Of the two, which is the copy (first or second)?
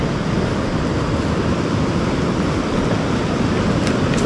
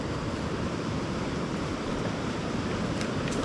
second